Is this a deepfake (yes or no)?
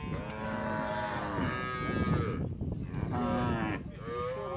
no